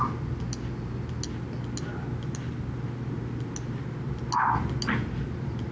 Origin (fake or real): real